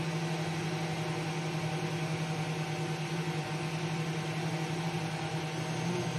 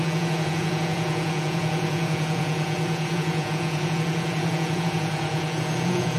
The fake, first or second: second